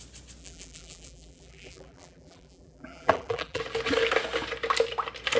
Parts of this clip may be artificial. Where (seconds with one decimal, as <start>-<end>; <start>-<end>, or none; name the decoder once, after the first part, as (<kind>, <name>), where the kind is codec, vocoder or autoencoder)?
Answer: 0.4-3.6 (vocoder, BigVGAN v2)